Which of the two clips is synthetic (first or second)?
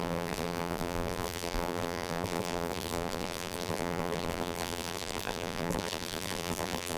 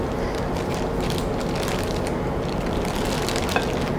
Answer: first